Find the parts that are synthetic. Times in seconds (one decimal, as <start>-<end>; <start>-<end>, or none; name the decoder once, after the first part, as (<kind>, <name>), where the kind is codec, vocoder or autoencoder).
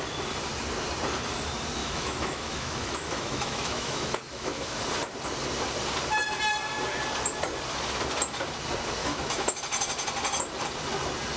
1.8-4.8 (autoencoder, DAC-VAE); 9.0-9.6